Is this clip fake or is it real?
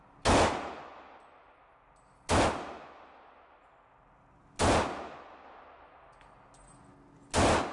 real